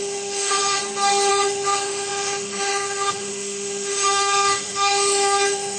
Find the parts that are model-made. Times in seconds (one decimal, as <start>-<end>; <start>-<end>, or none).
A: 0.0-0.8; 1.3-5.8